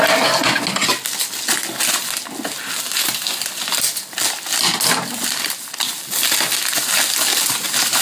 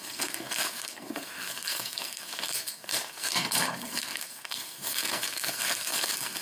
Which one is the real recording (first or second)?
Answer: first